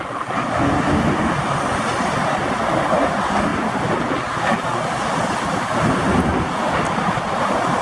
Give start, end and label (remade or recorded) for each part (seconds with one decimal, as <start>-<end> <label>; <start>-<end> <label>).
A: 0.0-7.8 recorded

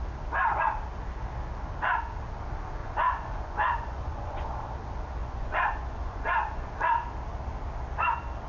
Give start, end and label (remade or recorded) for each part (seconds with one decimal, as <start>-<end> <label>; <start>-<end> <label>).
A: 0.0-2.8 recorded; 2.8-4.6 remade; 4.6-5.2 recorded; 5.2-6.7 remade; 6.7-8.5 recorded